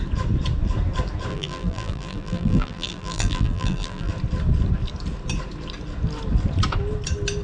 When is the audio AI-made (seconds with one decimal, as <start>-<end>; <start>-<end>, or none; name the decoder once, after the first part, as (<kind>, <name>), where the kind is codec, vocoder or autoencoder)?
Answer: 1.3-4.1 (vocoder, BigVGAN v2)